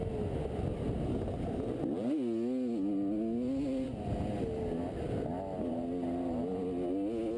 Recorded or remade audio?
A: recorded